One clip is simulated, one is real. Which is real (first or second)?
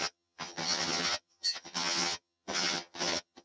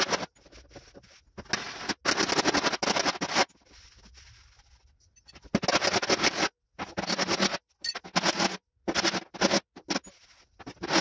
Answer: second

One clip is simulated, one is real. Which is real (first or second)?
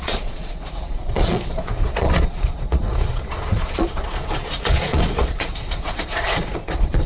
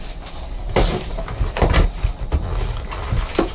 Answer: second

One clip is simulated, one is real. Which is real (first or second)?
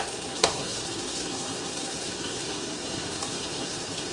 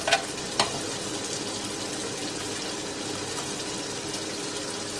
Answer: second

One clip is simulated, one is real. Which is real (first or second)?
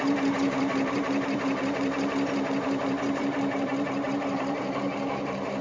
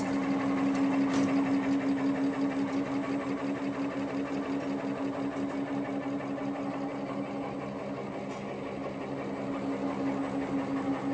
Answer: second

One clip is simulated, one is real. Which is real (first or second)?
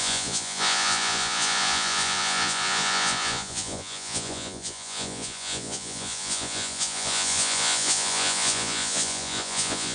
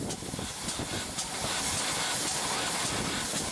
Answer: second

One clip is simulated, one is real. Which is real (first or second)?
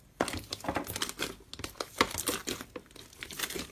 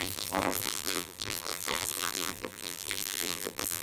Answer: first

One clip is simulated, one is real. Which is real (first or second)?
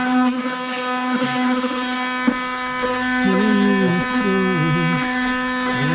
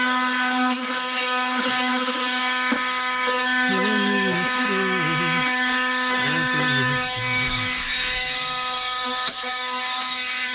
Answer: first